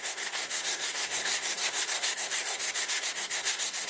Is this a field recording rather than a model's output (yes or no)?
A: no